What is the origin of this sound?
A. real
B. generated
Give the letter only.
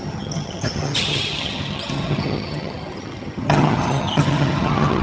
B